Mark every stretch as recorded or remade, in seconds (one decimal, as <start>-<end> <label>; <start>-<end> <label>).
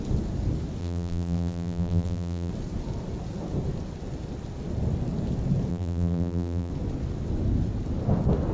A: 0.0-0.8 recorded; 0.8-2.5 remade; 2.5-5.7 recorded; 5.7-6.7 remade; 6.7-8.5 recorded